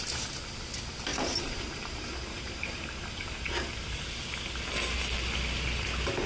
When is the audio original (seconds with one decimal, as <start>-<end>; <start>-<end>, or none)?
0.0-1.1; 4.0-6.3